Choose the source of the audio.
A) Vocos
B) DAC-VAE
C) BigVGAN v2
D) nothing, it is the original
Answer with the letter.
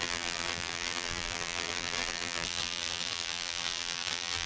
C